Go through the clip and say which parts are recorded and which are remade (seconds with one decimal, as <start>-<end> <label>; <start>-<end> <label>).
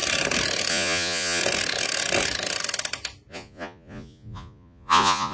0.0-0.7 recorded; 0.7-1.4 remade; 1.4-3.3 recorded; 3.3-5.3 remade